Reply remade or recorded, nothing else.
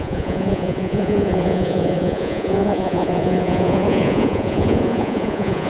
remade